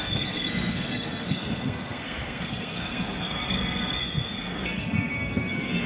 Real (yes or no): no